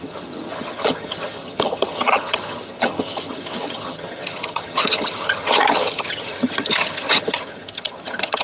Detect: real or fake fake